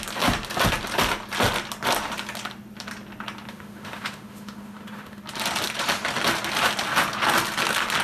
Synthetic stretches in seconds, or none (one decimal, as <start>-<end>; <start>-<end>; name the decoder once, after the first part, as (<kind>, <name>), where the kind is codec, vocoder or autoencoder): 3.5-5.2 (autoencoder, DAC-VAE)